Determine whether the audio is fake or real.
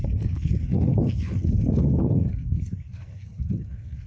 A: fake